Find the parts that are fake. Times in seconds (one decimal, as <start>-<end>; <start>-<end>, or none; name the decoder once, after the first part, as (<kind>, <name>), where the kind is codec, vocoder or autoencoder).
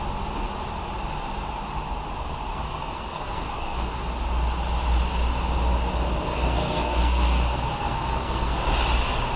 2.5-3.9 (codec, SNAC); 6.3-8.6